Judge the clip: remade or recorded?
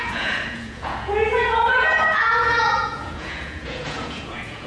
remade